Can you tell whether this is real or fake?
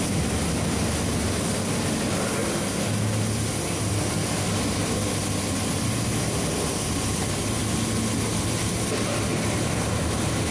real